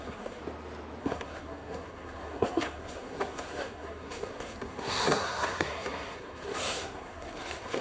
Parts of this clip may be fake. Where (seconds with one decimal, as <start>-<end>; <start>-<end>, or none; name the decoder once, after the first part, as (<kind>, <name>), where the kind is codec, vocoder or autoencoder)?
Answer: 0.0-0.4 (codec, SNAC); 1.0-7.8

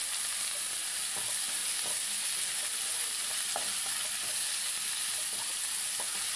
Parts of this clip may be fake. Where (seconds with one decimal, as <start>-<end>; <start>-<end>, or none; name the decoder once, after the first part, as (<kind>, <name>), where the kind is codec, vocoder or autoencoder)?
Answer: none

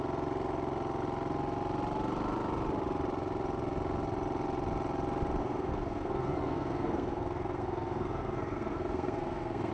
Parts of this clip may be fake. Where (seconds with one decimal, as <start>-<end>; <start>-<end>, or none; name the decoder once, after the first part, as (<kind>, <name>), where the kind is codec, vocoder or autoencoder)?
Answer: 5.4-9.7 (codec, SNAC)

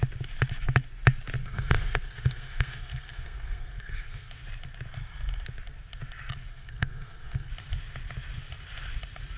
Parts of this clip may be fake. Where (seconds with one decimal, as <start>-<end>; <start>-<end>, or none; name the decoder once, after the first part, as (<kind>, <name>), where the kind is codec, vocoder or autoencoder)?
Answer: 1.4-4.3 (codec, SNAC); 6.5-7.5

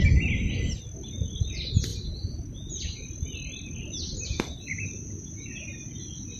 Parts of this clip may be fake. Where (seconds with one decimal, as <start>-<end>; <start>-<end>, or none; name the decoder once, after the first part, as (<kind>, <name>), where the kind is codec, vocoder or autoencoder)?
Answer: none

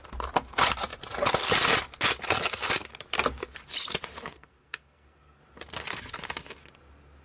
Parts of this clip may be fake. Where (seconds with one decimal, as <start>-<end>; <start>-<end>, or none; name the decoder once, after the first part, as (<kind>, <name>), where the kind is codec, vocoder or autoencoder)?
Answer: 4.3-5.4 (codec, SNAC)